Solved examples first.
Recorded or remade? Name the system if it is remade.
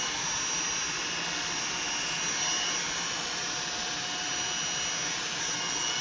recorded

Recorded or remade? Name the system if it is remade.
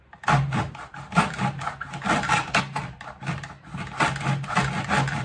recorded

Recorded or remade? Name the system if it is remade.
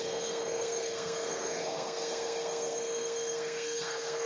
remade, codec, SNAC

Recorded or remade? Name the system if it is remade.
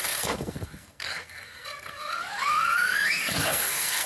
remade, codec, SNAC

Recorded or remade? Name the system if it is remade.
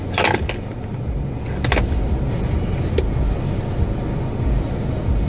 recorded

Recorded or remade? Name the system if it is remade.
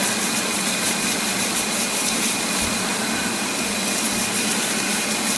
recorded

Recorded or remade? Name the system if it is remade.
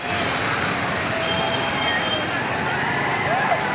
recorded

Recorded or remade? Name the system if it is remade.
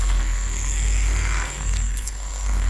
remade, codec, SNAC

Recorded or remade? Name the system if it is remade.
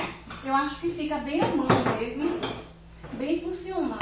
recorded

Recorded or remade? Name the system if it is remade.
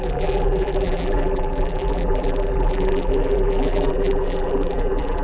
remade, vocoder, BigVGAN v2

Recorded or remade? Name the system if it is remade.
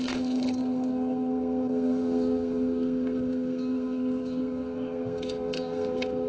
remade, codec, SNAC